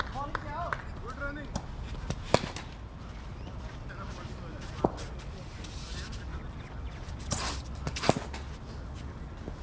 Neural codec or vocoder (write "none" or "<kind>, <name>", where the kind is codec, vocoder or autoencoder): none